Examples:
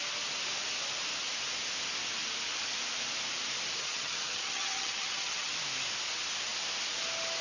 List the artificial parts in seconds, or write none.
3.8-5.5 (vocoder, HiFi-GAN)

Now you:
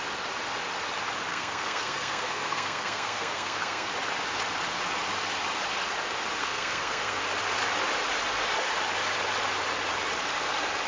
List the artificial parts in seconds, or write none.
1.3-3.9 (codec, SNAC); 6.4-7.2

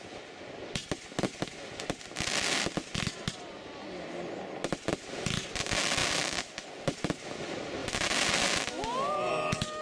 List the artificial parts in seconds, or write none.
none

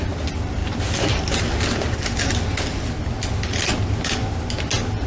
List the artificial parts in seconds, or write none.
none

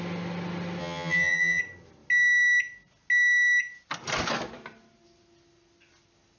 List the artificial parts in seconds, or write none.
0.8-1.6 (vocoder, HiFi-GAN)